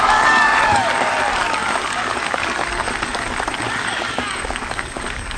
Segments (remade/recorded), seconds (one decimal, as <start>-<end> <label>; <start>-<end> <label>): 0.0-5.4 remade